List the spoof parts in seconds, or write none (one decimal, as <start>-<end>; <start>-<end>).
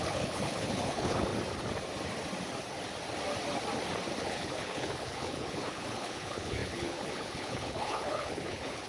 0.0-1.3; 4.2-8.9